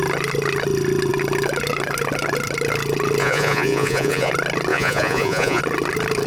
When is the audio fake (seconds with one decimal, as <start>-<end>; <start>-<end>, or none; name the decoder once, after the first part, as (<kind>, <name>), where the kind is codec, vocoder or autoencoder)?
3.2-4.3 (vocoder, Vocos); 4.7-5.6